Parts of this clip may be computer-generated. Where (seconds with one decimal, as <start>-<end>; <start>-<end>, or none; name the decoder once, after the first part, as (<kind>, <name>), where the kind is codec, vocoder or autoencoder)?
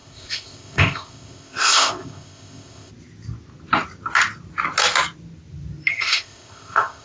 0.0-2.9 (codec, ZipCodec); 5.9-7.0